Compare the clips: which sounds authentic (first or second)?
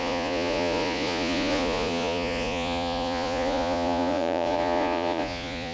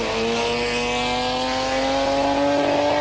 second